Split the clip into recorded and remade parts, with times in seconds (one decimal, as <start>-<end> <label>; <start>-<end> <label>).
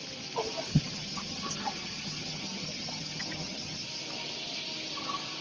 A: 0.0-0.7 recorded; 0.7-3.9 remade; 3.9-5.4 recorded